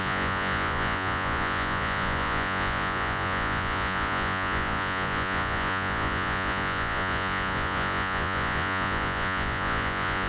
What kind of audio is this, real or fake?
fake